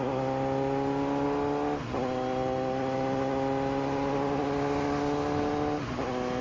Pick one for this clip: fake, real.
real